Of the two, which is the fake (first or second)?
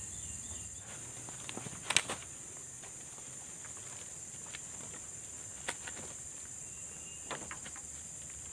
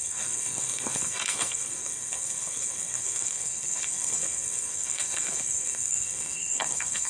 second